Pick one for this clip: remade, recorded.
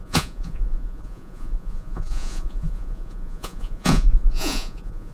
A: remade